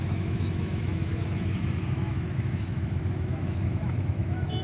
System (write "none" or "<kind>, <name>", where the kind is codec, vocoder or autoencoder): autoencoder, DAC-VAE